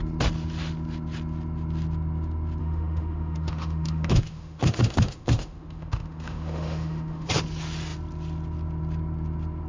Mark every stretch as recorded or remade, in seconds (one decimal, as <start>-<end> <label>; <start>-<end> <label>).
0.0-2.6 recorded; 2.6-7.3 remade; 7.3-9.7 recorded